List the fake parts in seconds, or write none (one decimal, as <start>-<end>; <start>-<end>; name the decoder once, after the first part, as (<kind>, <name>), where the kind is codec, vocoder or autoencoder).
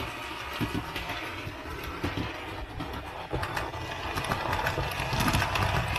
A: none